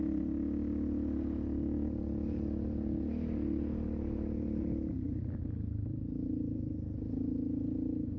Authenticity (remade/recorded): recorded